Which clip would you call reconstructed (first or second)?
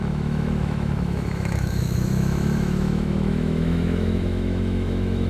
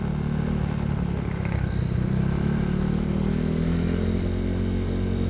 first